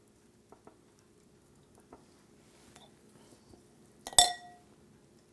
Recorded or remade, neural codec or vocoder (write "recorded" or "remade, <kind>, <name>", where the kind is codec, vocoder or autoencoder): recorded